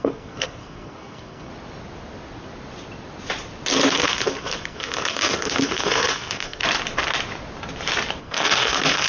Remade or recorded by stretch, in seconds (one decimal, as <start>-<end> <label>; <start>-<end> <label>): 0.0-1.5 remade; 1.5-3.9 recorded; 3.9-6.6 remade; 6.6-8.2 recorded; 8.2-9.1 remade